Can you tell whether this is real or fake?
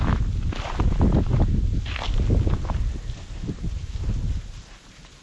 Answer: real